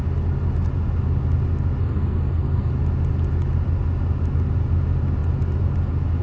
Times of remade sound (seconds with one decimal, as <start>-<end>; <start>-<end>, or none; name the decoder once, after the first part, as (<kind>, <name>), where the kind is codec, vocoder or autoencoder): 1.8-2.7 (codec, SNAC)